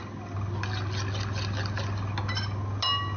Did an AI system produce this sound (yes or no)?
no